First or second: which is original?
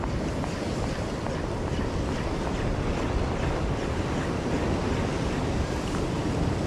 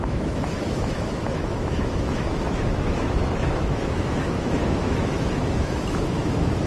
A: first